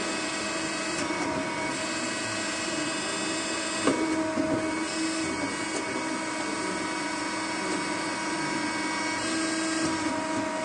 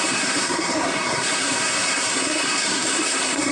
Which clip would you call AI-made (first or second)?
second